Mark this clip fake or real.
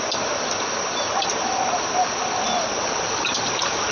real